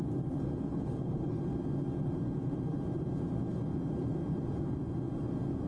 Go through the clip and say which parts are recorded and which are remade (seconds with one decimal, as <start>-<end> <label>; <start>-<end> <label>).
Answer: 0.0-0.7 recorded; 0.7-1.4 remade; 1.4-5.7 recorded